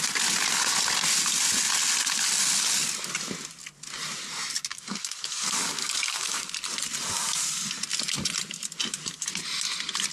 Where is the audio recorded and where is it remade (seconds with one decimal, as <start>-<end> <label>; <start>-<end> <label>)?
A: 0.0-4.7 recorded; 4.7-6.5 remade; 6.5-10.1 recorded